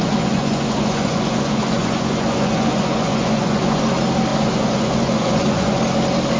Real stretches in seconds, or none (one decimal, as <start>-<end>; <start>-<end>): 3.8-4.3; 5.8-6.4